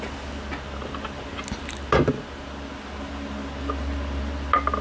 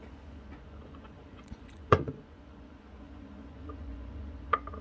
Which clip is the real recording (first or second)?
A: first